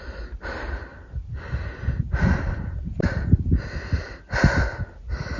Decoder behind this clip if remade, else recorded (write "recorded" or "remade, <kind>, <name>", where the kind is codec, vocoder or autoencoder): recorded